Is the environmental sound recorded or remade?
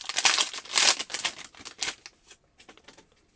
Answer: recorded